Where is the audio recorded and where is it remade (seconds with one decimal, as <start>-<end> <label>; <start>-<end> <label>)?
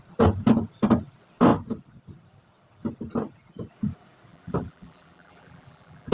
0.0-4.3 recorded; 4.3-6.1 remade